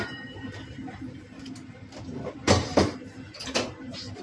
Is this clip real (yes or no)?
no